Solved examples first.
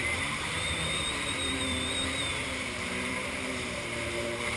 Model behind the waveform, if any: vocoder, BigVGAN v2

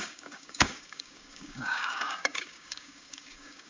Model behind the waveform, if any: codec, DAC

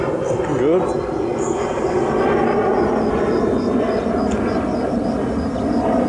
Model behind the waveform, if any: none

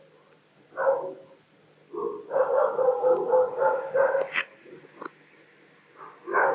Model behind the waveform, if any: none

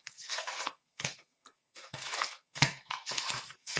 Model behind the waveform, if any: codec, SNAC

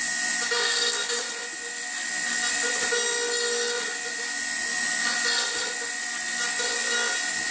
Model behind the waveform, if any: none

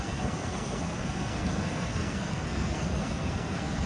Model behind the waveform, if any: codec, SNAC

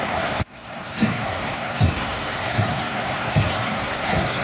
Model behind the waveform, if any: codec, SNAC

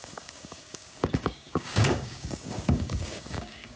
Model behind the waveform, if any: codec, DAC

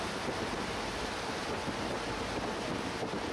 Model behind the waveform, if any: none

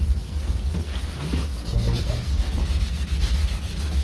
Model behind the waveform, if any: codec, SNAC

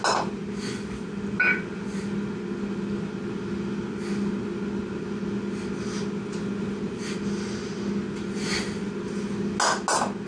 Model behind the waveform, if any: none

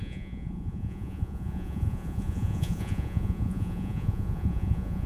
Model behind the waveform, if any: vocoder, Vocos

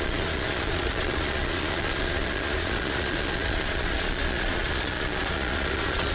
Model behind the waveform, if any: vocoder, Vocos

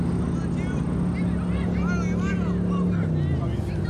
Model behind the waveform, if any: none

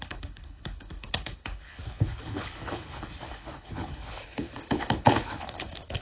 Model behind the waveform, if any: codec, HILCodec